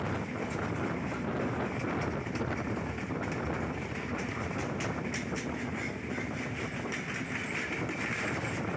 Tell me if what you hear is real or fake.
real